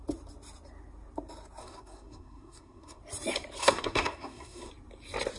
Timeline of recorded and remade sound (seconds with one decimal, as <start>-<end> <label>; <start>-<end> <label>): 0.0-1.6 recorded; 1.6-3.0 remade; 3.0-3.6 recorded; 3.6-4.7 remade; 4.7-5.4 recorded